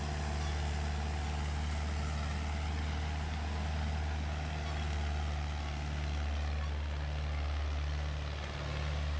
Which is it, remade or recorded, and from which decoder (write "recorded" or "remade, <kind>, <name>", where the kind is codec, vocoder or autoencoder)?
recorded